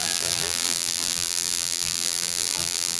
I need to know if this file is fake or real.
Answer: fake